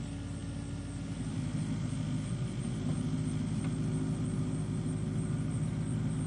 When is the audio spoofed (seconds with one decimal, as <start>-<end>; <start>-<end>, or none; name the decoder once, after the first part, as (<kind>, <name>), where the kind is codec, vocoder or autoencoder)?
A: none